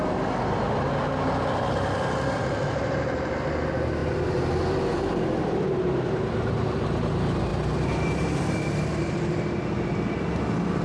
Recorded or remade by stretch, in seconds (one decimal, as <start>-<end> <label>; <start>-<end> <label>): 0.0-10.8 recorded